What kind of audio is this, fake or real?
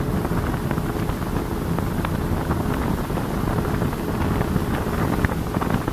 real